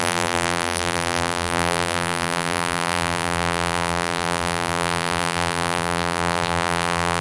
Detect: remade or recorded remade